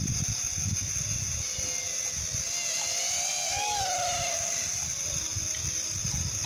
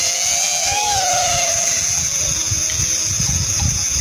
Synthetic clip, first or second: second